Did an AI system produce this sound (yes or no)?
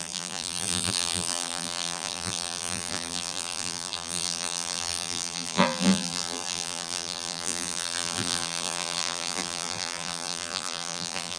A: yes